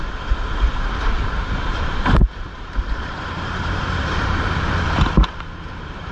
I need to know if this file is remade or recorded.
remade